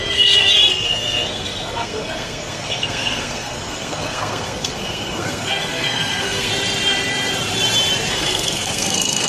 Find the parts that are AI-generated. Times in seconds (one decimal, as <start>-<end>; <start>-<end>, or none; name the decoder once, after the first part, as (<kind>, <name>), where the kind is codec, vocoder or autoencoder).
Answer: 0.0-6.5 (codec, SNAC); 8.1-9.3